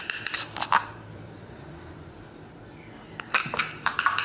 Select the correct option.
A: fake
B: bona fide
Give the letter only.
A